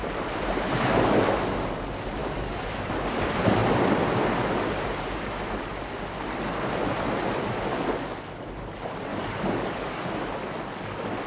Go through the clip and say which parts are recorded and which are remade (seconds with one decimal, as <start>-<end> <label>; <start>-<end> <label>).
0.0-2.2 recorded; 2.2-2.9 remade; 2.9-9.1 recorded; 9.1-10.1 remade; 10.1-11.3 recorded